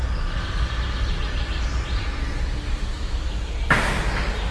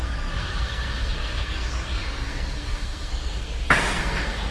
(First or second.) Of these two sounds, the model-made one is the second